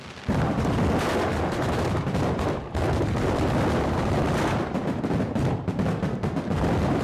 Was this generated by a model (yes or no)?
yes